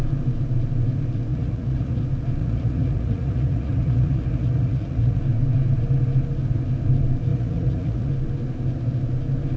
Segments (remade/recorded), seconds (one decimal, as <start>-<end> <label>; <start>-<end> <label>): 0.0-1.3 recorded; 1.3-2.0 remade; 2.0-2.4 recorded; 2.4-5.2 remade; 5.2-7.3 recorded; 7.3-8.1 remade; 8.1-9.6 recorded